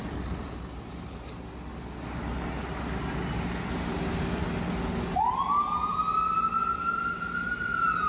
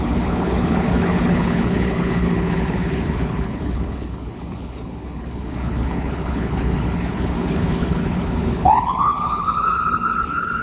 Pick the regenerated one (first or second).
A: second